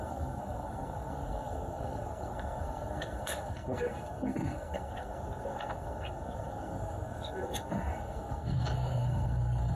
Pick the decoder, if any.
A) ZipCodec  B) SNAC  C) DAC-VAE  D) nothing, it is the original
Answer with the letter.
B